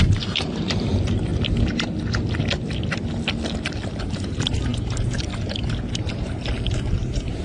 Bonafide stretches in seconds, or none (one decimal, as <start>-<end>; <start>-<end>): 1.3-4.0